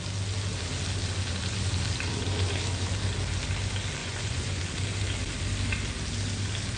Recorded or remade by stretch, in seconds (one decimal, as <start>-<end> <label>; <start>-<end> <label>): 0.0-4.0 recorded; 4.0-4.6 remade; 4.6-6.8 recorded